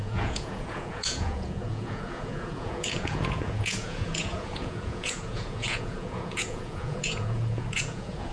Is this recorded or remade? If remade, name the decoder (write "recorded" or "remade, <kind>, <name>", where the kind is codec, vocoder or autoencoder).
remade, vocoder, Vocos